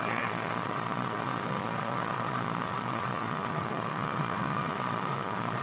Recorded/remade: remade